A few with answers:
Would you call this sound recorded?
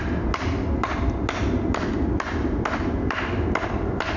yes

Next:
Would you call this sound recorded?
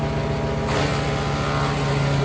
yes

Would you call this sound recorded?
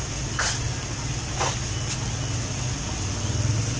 yes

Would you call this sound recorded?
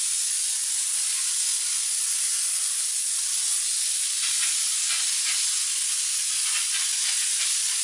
yes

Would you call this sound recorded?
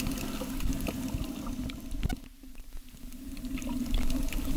yes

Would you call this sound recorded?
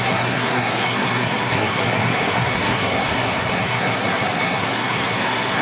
no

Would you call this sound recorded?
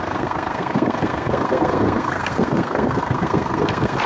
no